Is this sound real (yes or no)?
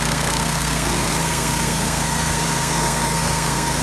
no